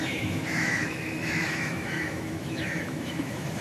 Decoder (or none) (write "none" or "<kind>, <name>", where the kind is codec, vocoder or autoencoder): autoencoder, DAC-VAE